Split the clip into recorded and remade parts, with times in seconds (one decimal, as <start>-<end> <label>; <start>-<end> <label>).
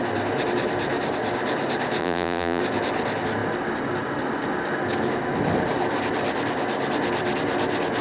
0.0-2.0 recorded; 2.0-2.6 remade; 2.6-8.0 recorded